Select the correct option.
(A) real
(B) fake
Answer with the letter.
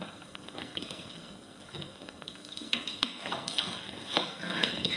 B